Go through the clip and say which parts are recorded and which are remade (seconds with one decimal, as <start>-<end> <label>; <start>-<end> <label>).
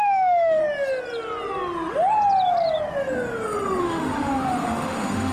0.0-0.6 remade; 0.6-3.8 recorded; 3.8-5.3 remade